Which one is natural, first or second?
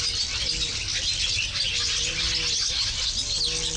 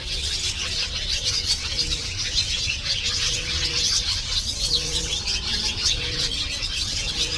first